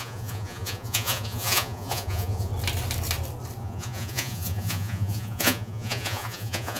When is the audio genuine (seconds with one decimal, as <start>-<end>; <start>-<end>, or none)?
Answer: 2.5-3.6